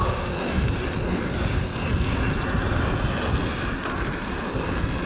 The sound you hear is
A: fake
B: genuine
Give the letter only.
B